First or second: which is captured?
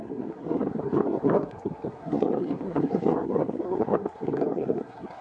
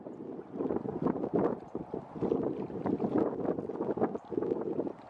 second